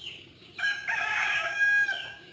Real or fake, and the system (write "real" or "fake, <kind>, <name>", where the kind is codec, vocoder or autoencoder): fake, codec, DAC